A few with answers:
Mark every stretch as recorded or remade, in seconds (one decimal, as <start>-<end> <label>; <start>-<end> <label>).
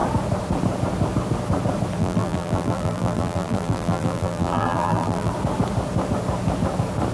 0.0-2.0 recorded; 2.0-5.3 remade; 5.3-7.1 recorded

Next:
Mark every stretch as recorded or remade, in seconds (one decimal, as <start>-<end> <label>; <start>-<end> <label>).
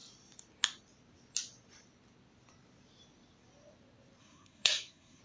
0.0-4.2 recorded; 4.2-5.2 remade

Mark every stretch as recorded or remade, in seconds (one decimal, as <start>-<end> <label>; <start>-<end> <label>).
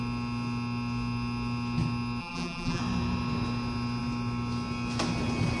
0.0-2.2 recorded; 2.2-2.8 remade; 2.8-5.6 recorded